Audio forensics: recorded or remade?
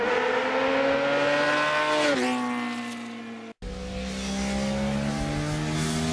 recorded